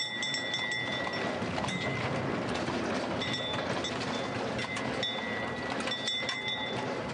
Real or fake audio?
real